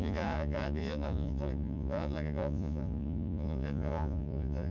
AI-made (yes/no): yes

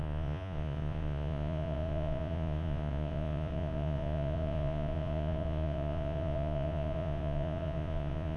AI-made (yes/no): yes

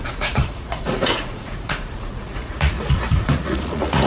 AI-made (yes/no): yes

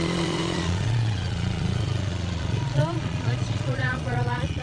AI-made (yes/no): yes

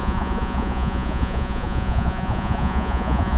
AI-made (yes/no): yes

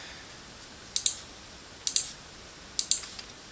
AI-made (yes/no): no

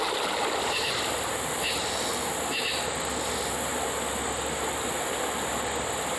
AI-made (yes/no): no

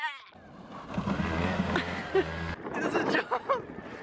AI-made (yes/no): no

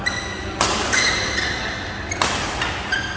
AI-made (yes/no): no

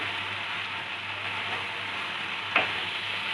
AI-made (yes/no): no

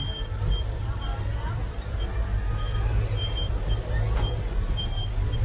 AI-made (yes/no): no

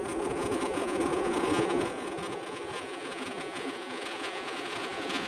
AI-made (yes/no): yes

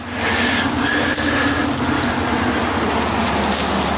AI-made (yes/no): no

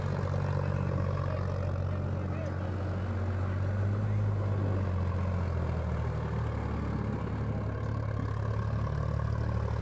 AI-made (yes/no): no